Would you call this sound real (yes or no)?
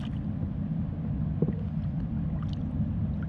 yes